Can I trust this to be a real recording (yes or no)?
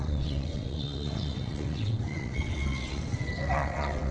no